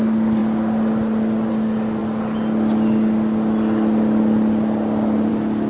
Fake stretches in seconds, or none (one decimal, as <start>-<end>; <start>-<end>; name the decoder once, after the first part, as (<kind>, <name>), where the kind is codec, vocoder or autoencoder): none